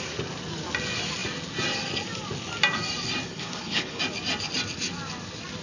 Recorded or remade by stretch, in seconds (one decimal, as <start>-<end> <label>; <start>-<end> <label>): 0.0-3.3 recorded; 3.3-4.0 remade; 4.0-5.6 recorded